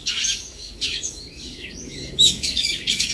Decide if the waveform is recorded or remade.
remade